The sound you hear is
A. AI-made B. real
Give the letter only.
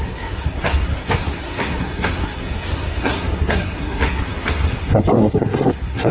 A